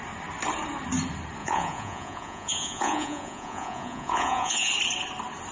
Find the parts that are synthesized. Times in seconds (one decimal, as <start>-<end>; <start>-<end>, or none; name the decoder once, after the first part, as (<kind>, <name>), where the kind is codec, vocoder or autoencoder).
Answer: 1.4-4.7 (vocoder, Vocos)